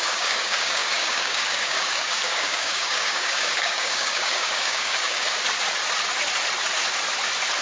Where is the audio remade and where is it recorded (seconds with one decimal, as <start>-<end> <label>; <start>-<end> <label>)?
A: 0.0-5.3 remade; 5.3-7.6 recorded